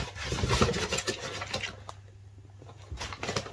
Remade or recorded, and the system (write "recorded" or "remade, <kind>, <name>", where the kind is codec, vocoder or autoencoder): recorded